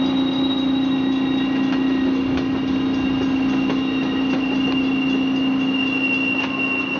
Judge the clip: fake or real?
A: real